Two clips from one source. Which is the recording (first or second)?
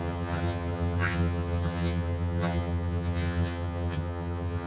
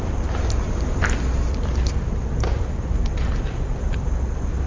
second